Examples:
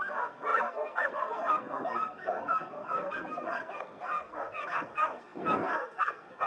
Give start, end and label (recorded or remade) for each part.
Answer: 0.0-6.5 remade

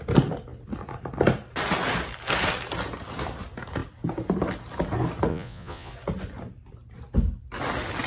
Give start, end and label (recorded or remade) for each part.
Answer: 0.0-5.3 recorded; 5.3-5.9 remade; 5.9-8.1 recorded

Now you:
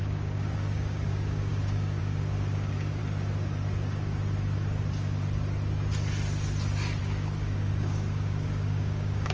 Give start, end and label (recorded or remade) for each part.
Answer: 0.0-3.0 remade; 3.0-7.0 recorded; 7.0-9.3 remade

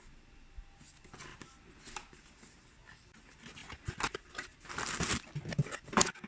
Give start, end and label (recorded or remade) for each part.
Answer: 0.0-1.3 recorded; 1.3-2.2 remade; 2.2-6.3 recorded

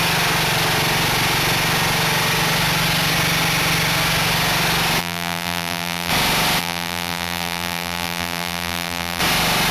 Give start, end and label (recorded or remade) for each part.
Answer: 0.0-5.0 recorded; 5.0-6.1 remade; 6.1-6.6 recorded; 6.6-9.2 remade; 9.2-9.7 recorded